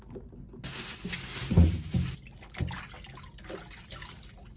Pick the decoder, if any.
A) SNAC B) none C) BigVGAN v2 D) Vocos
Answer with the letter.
B